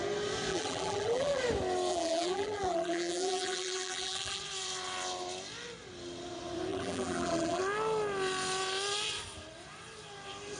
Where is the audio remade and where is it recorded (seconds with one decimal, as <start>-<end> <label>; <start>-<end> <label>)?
0.0-0.5 recorded; 0.5-1.4 remade; 1.4-1.9 recorded; 1.9-4.4 remade; 4.4-6.7 recorded; 6.7-7.6 remade; 7.6-10.6 recorded